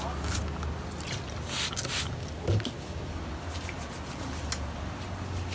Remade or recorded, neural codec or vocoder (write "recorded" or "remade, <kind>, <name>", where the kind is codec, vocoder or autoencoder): recorded